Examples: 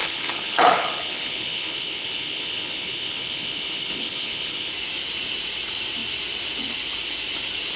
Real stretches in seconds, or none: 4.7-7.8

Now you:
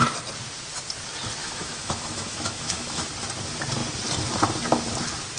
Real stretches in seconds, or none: 0.0-1.4; 3.1-5.4

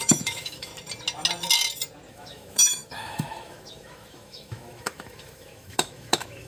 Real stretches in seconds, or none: 0.7-2.1

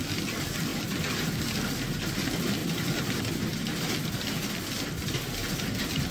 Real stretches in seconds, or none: 0.0-2.6; 3.2-6.1

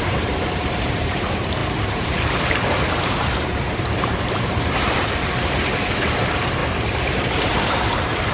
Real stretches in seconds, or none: 6.6-7.1